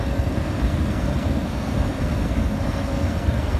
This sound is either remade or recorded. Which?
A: remade